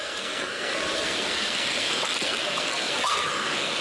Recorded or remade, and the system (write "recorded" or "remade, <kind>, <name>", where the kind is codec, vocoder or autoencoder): remade, codec, SNAC